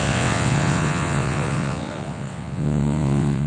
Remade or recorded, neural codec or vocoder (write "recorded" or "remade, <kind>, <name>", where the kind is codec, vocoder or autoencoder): remade, vocoder, WaveNeXt